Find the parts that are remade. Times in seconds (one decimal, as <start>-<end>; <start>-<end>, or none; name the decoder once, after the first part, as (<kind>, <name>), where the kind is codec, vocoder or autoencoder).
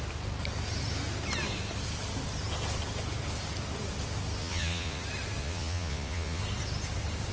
4.4-5.0 (vocoder, Vocos); 5.4-6.4